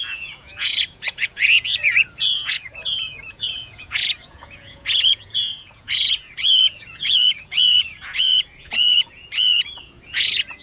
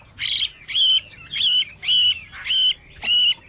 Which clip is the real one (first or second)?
second